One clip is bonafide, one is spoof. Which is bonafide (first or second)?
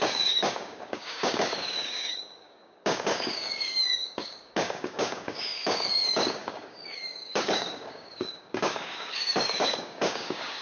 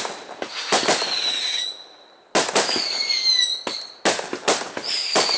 second